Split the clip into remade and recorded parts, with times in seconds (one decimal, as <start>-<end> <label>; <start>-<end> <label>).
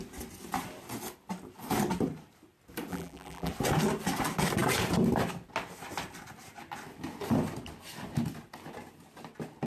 0.0-2.9 recorded; 2.9-3.5 remade; 3.5-9.7 recorded